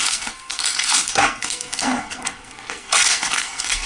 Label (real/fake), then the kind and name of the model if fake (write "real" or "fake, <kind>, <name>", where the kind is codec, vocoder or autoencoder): fake, codec, SNAC